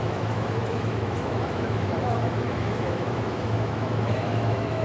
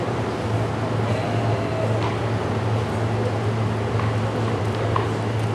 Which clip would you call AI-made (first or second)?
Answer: first